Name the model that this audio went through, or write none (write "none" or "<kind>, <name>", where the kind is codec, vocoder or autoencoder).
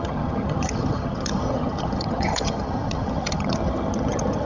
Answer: vocoder, HiFi-GAN